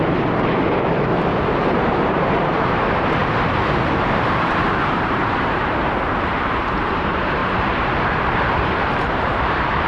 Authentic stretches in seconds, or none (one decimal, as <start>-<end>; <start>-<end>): 1.1-1.7